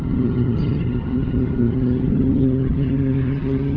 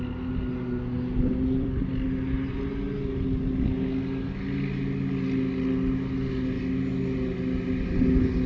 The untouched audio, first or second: second